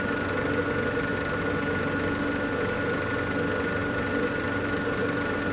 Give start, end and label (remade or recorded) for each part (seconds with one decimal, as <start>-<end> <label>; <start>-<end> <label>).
0.0-5.5 recorded